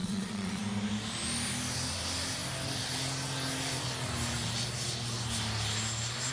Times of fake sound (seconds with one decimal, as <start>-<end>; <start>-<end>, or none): 0.0-0.6